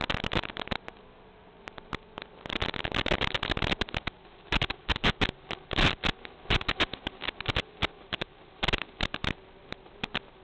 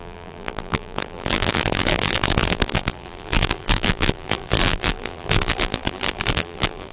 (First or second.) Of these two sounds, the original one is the first